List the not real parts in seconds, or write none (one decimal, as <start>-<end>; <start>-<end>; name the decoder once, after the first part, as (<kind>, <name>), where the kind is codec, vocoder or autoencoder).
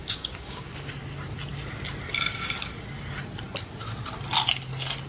0.0-0.9 (codec, DAC)